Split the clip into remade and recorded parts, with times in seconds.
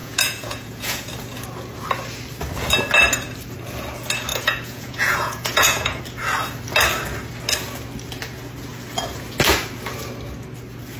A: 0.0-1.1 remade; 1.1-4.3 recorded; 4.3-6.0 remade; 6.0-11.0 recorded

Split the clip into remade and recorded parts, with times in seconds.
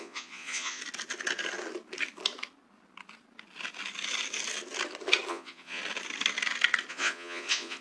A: 0.0-0.8 remade; 0.8-5.3 recorded; 5.3-5.8 remade; 5.8-6.9 recorded; 6.9-7.8 remade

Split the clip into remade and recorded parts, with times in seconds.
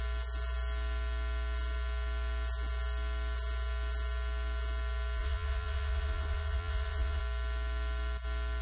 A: 0.0-5.2 recorded; 5.2-7.2 remade; 7.2-8.6 recorded